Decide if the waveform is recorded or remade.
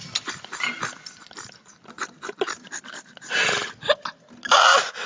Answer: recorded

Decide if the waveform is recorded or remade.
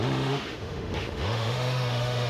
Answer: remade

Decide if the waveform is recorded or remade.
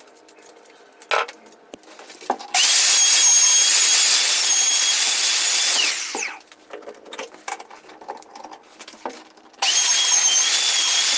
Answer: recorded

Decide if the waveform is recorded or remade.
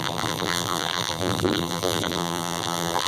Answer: remade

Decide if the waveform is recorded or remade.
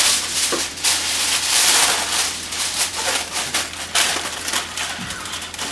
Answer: remade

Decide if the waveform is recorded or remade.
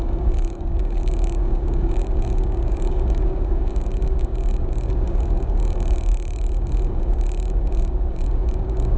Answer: remade